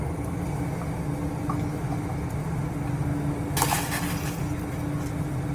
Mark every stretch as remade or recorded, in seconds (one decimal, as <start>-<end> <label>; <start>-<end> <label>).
0.0-5.5 recorded